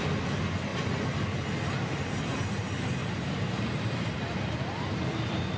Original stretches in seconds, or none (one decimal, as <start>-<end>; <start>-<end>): 0.0-3.0

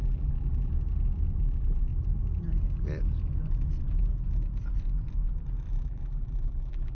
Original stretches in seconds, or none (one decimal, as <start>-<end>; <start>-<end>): 0.7-1.4; 1.9-5.7